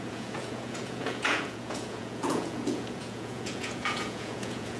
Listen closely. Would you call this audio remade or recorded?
remade